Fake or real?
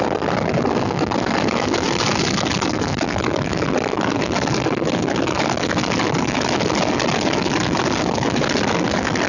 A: real